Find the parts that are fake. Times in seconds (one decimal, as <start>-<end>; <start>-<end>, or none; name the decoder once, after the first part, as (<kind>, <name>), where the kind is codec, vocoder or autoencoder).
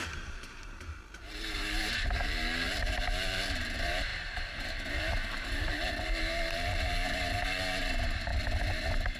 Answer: 0.0-8.3 (vocoder, BigVGAN v2)